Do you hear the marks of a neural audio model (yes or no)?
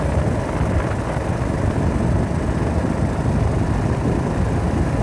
no